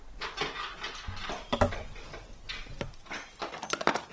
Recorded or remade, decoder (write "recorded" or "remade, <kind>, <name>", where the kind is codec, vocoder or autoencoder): recorded